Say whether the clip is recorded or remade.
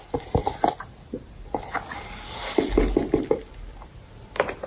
recorded